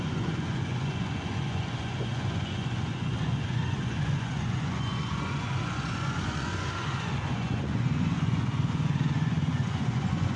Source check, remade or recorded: remade